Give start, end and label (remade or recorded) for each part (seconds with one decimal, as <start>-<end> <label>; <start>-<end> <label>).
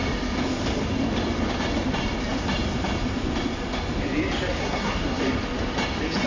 0.0-4.6 recorded; 4.6-5.2 remade; 5.2-6.3 recorded